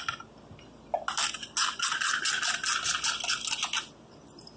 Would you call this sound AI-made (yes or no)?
no